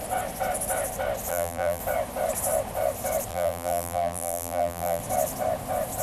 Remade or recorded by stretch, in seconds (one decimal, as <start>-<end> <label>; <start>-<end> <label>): 0.0-1.3 recorded; 1.3-1.8 remade; 1.8-3.3 recorded; 3.3-5.0 remade; 5.0-6.0 recorded